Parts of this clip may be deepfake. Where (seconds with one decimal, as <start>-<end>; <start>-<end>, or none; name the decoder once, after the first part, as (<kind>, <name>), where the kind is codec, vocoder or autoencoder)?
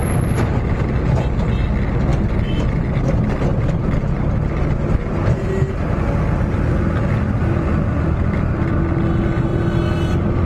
none